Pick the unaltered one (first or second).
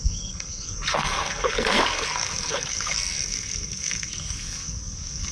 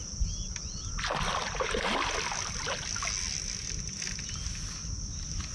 second